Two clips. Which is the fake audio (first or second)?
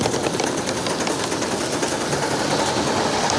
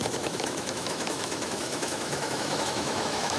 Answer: second